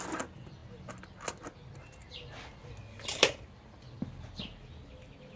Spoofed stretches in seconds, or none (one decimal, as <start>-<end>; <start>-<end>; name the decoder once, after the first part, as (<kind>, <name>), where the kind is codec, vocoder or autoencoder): none